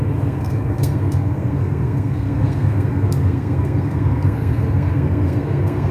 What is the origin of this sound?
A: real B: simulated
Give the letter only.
B